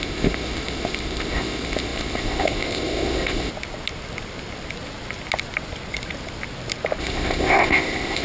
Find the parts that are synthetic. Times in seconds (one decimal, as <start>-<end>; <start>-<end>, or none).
0.0-3.5; 7.0-8.2